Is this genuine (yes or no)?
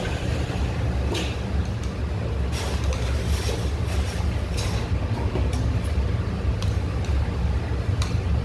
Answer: yes